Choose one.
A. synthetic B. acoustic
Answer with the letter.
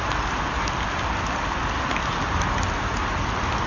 B